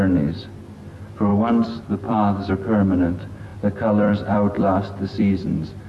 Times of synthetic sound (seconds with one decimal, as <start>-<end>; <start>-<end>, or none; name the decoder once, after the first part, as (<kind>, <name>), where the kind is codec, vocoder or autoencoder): 1.3-2.5 (vocoder, BigVGAN v2); 3.5-5.9